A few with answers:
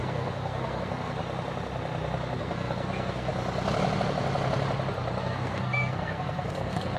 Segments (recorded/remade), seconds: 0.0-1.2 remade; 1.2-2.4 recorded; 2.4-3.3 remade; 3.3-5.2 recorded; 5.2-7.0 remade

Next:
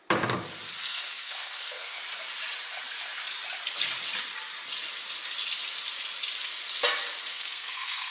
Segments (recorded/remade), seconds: 0.0-0.8 recorded; 0.8-2.0 remade; 2.0-7.3 recorded; 7.3-8.1 remade

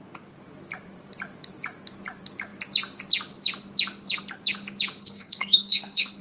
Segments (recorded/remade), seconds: 0.0-5.0 recorded; 5.0-6.2 remade